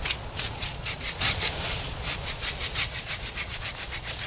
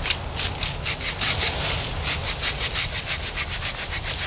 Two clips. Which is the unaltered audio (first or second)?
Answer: second